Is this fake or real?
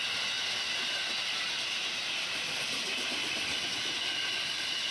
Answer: real